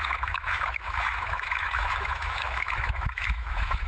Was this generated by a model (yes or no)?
yes